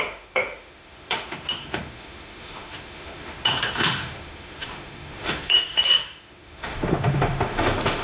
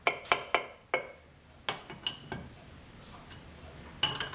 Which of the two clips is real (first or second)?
second